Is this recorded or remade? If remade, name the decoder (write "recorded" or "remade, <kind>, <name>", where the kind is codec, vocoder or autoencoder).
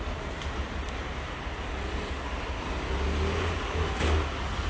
recorded